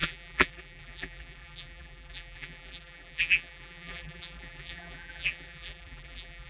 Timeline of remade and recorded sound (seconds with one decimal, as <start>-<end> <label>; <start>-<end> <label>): 0.0-6.5 remade